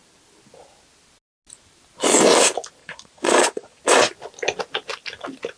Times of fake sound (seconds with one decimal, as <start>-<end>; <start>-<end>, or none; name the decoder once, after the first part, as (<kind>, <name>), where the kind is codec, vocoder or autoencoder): 2.8-3.8 (vocoder, Vocos)